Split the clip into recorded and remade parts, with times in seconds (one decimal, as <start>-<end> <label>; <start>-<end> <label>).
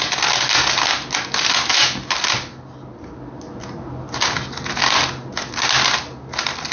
0.0-6.7 recorded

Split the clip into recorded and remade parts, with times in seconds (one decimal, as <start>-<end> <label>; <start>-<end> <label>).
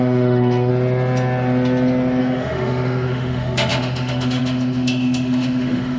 0.0-0.7 remade; 0.7-2.2 recorded; 2.2-6.0 remade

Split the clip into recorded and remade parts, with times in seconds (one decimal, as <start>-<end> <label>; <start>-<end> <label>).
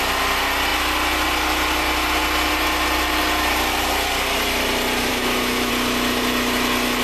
0.0-5.1 recorded; 5.1-5.7 remade; 5.7-7.0 recorded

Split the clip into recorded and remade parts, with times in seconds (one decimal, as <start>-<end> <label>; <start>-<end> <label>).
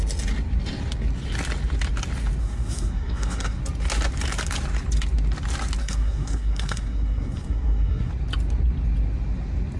0.0-2.4 recorded; 2.4-3.6 remade; 3.6-5.8 recorded; 5.8-8.1 remade; 8.1-9.8 recorded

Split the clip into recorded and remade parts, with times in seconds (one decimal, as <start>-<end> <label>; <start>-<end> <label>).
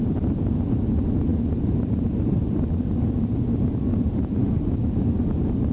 0.0-1.3 recorded; 1.3-4.7 remade; 4.7-5.7 recorded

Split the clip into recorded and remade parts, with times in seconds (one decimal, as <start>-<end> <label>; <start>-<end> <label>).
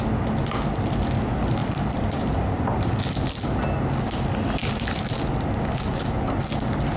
0.0-1.6 recorded; 1.6-2.8 remade; 2.8-4.6 recorded; 4.6-5.3 remade; 5.3-7.0 recorded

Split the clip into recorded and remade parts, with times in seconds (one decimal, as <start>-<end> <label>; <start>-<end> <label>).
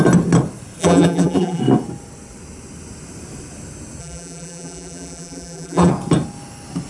0.0-0.8 recorded; 0.8-1.6 remade; 1.6-4.0 recorded; 4.0-5.9 remade; 5.9-6.9 recorded